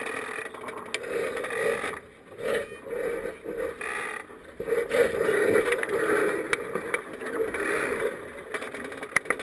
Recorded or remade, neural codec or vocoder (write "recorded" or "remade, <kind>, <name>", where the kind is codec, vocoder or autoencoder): recorded